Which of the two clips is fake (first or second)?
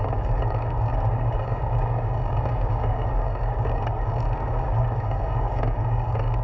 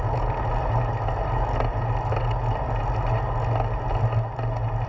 first